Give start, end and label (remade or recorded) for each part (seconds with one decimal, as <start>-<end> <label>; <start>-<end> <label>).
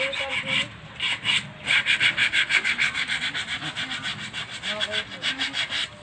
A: 0.0-2.2 recorded; 2.2-3.2 remade; 3.2-6.0 recorded